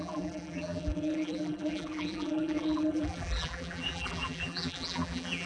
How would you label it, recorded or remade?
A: remade